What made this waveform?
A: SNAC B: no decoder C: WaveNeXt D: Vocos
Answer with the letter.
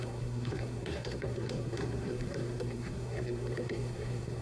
A